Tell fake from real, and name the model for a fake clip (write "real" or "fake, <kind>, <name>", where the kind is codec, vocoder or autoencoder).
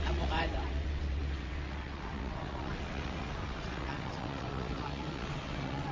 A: fake, vocoder, WaveNeXt